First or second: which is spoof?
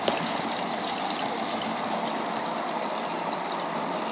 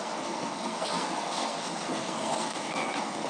second